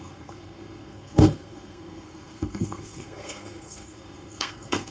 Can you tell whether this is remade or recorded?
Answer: remade